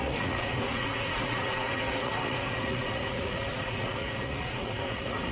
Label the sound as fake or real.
fake